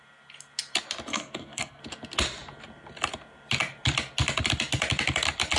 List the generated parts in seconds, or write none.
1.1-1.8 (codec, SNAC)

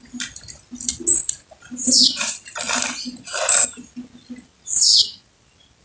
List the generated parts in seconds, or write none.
none